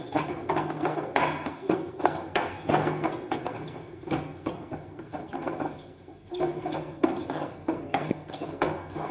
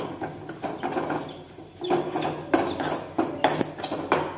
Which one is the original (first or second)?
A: second